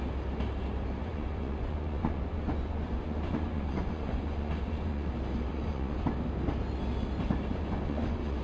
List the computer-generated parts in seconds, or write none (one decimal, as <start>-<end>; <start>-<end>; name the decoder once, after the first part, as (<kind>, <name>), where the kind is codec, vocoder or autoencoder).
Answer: 1.0-5.1 (vocoder, Vocos); 5.5-6.1; 7.5-8.4

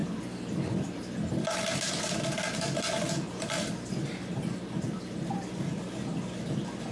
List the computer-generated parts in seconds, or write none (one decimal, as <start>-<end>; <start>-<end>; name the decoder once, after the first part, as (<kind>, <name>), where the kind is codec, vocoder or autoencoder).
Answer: none